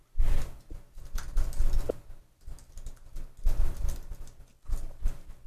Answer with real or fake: real